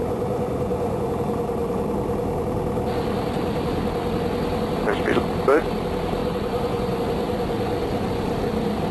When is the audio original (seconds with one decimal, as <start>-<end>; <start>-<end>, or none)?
1.1-6.2; 7.0-8.9